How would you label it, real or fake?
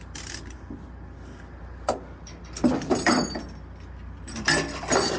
real